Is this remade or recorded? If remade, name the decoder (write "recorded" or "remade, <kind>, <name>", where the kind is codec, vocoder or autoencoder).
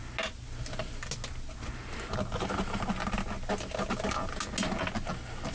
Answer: recorded